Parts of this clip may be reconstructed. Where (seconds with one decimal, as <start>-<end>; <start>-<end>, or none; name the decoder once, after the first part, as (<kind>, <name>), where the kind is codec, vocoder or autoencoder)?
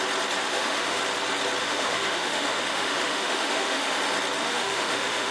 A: 0.4-1.0 (autoencoder, DAC-VAE); 1.6-4.0; 4.4-5.3